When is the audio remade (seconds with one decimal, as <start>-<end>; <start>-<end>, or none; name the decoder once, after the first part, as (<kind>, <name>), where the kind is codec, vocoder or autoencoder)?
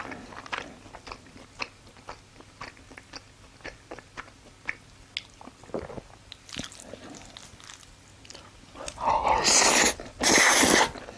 none